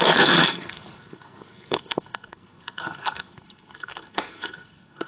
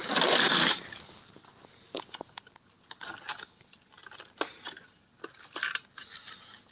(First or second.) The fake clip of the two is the first